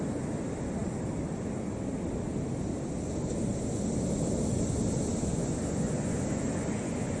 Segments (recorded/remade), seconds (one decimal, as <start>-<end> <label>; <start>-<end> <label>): 0.0-5.3 recorded; 5.3-7.2 remade